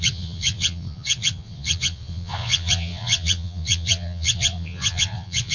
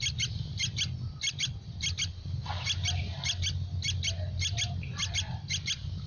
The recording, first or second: second